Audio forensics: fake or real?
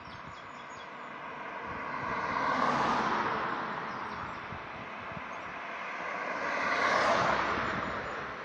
real